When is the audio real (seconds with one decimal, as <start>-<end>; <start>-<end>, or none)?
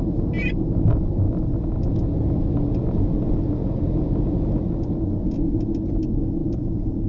0.0-7.1